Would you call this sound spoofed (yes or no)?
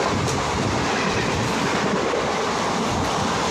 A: yes